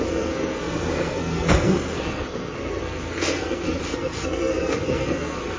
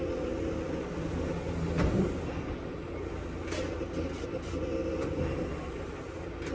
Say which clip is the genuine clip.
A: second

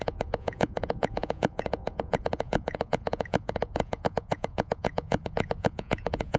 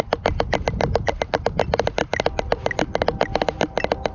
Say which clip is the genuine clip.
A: second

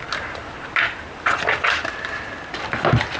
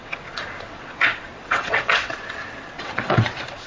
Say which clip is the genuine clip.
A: first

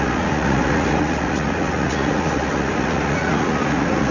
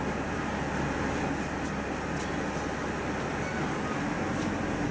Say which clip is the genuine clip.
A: second